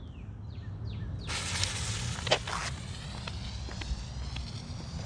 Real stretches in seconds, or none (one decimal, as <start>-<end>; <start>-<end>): 0.0-5.1